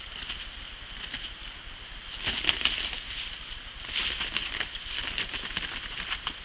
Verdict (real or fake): real